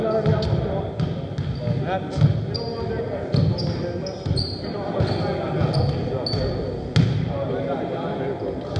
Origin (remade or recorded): recorded